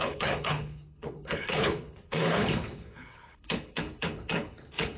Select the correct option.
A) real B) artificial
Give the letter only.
B